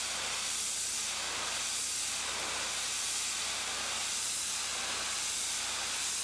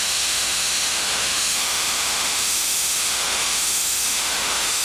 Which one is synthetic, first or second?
second